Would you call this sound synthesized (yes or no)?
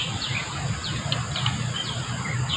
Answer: no